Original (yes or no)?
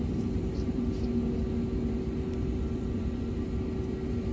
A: yes